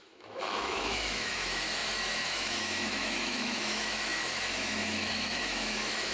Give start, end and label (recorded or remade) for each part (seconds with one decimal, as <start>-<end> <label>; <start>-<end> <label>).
0.0-6.1 remade